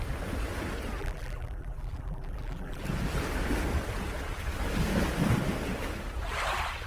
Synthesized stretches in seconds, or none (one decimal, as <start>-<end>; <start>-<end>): 1.0-2.8